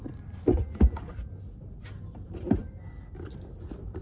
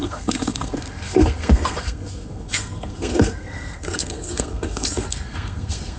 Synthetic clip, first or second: second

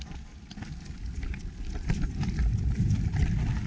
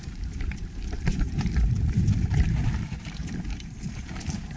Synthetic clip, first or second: second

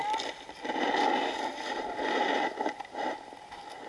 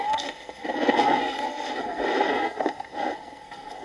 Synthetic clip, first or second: second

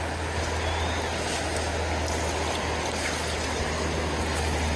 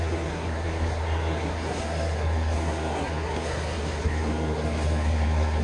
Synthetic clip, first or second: second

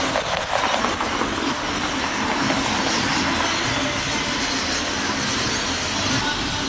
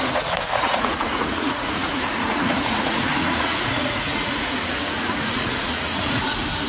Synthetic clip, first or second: second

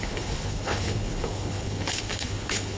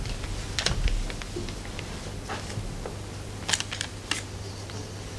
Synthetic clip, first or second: first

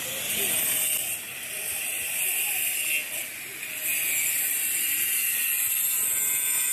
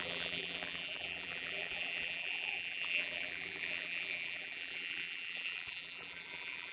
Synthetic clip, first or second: second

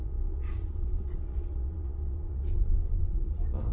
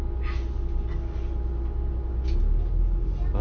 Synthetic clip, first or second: first